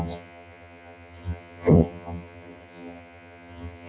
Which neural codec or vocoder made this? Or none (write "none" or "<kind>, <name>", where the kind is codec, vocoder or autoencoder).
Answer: vocoder, HiFi-GAN